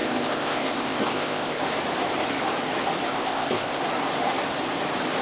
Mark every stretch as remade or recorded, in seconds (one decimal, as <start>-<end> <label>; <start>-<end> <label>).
0.0-1.6 remade; 1.6-3.1 recorded; 3.1-3.8 remade; 3.8-5.2 recorded